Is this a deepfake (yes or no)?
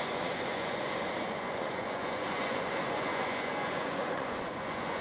yes